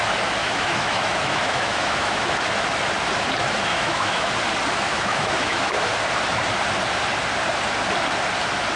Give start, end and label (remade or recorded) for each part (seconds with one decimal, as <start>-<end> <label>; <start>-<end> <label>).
0.0-0.4 recorded; 0.4-2.4 remade; 2.4-3.7 recorded; 3.7-4.3 remade; 4.3-4.9 recorded; 4.9-5.7 remade; 5.7-8.8 recorded